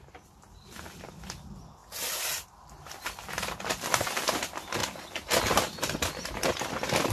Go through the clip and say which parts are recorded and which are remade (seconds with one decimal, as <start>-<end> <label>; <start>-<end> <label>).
0.0-1.8 remade; 1.8-3.0 recorded; 3.0-4.8 remade; 4.8-6.6 recorded; 6.6-7.1 remade

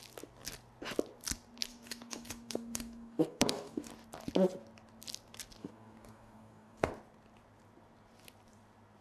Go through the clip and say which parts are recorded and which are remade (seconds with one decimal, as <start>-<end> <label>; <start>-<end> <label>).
0.0-1.7 recorded; 1.7-3.9 remade; 3.9-5.6 recorded; 5.6-6.9 remade; 6.9-9.0 recorded

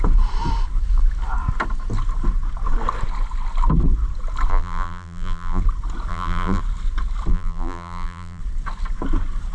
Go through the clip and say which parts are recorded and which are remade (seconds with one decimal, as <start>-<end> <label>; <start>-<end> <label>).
0.0-4.5 recorded; 4.5-5.6 remade; 5.6-6.1 recorded; 6.1-6.6 remade; 6.6-7.3 recorded; 7.3-8.4 remade; 8.4-9.5 recorded

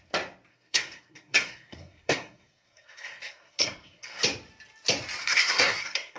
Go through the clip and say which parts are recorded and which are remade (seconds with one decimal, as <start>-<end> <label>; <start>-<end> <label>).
0.0-0.5 recorded; 0.5-4.2 remade; 4.2-5.2 recorded; 5.2-6.2 remade

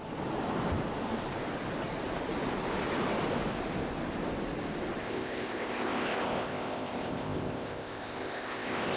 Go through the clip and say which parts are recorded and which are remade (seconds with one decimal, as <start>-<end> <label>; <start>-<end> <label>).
0.0-5.0 recorded; 5.0-9.0 remade

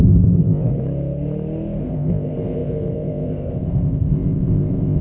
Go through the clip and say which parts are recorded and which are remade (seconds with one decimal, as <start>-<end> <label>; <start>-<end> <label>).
0.0-0.7 remade; 0.7-1.8 recorded; 1.8-5.0 remade

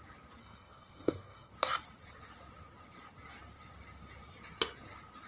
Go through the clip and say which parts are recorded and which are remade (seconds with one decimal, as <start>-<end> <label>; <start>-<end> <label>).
0.0-0.4 recorded; 0.4-1.5 remade; 1.5-5.3 recorded

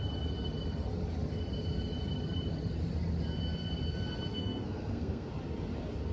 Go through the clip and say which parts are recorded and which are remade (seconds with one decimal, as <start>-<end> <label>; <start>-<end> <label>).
0.0-4.3 recorded; 4.3-5.3 remade; 5.3-6.1 recorded